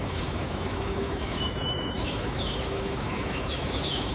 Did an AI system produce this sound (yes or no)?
yes